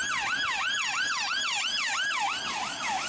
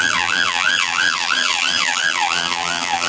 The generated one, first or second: second